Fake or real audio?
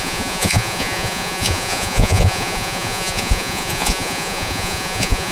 fake